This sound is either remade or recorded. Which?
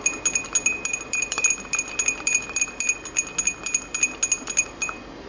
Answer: recorded